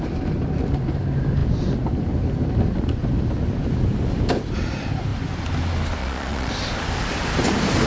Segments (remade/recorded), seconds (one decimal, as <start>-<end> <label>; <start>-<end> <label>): 0.0-6.0 recorded; 6.0-6.5 remade; 6.5-7.9 recorded